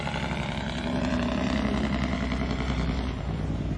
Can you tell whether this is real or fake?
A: fake